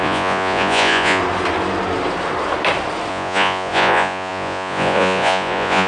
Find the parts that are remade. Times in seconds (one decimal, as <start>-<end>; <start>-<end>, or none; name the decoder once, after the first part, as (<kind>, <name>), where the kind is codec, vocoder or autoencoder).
0.0-1.2 (vocoder, Vocos); 3.1-5.9